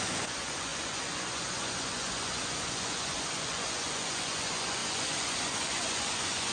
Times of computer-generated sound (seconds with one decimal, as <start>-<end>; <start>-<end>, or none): 0.0-6.5